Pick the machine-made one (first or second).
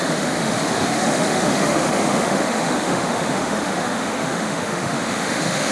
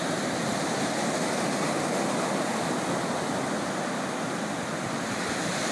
first